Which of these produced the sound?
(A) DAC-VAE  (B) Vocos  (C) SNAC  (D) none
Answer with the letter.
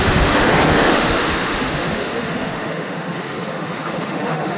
A